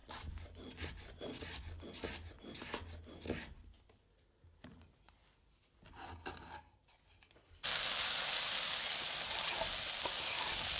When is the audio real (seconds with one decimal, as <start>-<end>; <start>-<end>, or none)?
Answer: 0.9-6.8; 9.4-10.8